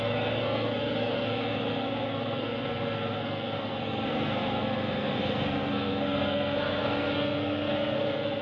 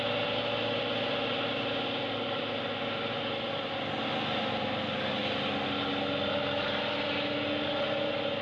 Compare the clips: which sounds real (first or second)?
second